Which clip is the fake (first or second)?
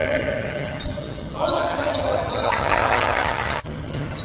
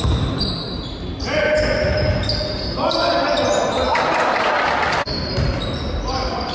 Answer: first